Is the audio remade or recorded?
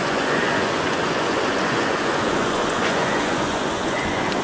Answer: remade